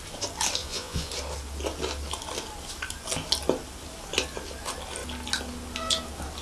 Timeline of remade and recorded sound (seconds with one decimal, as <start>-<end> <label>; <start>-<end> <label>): 0.0-0.6 recorded; 0.6-1.1 remade; 1.1-6.4 recorded